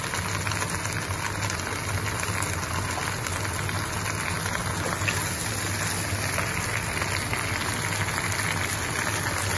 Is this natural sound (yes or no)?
yes